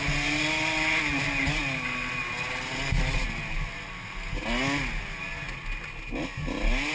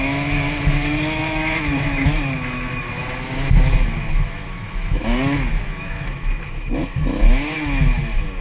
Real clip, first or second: first